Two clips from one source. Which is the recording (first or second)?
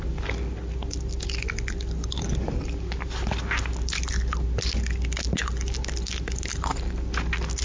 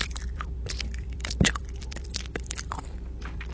first